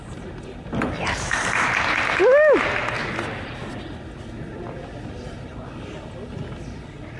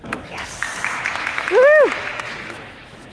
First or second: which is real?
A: first